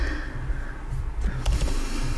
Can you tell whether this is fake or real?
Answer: real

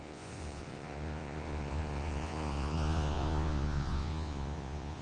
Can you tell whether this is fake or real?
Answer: fake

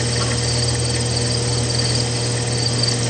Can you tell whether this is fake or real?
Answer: real